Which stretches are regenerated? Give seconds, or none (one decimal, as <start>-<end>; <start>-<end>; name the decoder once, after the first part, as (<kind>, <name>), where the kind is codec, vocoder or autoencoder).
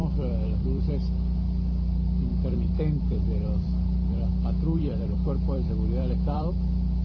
0.0-0.9 (vocoder, BigVGAN v2); 2.3-6.5